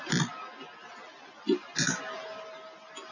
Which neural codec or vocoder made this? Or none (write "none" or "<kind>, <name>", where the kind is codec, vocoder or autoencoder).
none